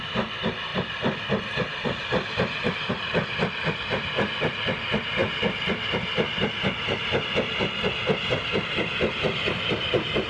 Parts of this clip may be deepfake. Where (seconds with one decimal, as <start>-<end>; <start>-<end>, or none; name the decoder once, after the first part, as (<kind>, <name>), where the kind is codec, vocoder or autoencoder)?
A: none